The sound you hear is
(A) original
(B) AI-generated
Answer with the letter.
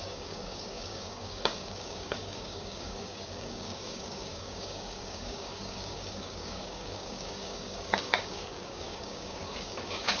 B